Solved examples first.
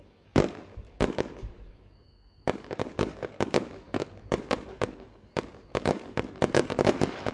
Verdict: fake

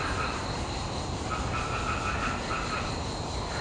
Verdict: real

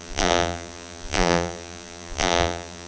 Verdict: fake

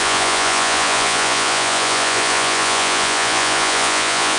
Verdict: fake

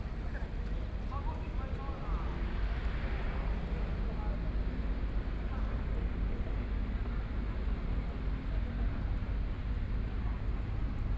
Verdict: real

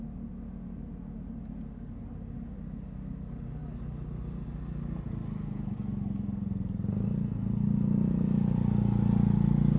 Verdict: real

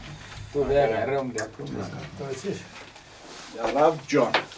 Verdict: real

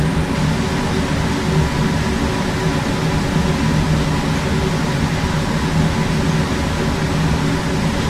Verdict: real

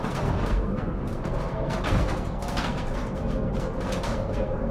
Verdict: fake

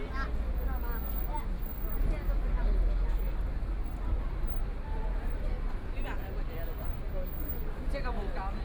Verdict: real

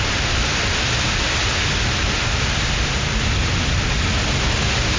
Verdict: real